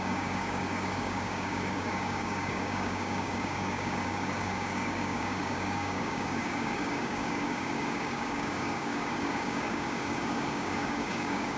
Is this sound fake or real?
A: fake